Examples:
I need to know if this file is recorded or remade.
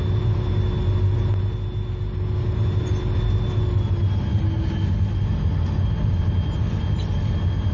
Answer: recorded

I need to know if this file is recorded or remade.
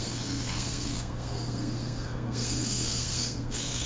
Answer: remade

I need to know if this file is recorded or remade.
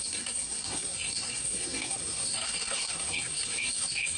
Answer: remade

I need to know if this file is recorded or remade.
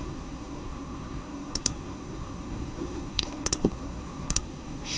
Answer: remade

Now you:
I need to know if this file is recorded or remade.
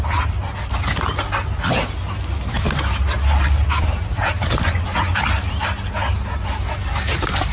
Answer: recorded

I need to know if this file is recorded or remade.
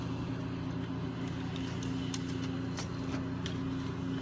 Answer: recorded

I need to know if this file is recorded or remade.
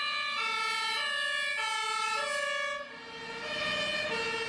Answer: recorded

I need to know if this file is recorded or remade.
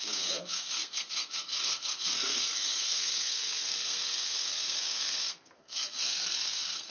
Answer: remade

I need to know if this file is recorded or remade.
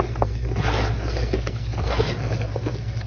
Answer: remade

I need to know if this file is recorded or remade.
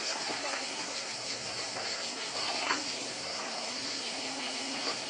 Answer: remade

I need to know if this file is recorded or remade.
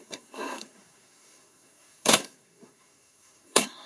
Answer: remade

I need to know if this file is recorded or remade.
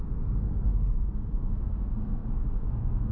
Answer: remade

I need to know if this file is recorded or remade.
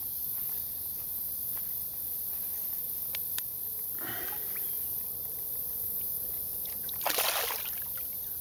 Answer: recorded